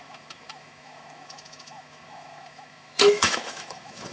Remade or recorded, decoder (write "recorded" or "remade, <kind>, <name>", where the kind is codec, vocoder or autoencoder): remade, autoencoder, DAC-VAE